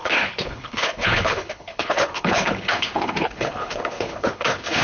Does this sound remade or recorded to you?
remade